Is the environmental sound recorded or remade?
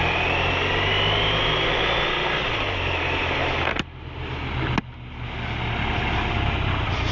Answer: recorded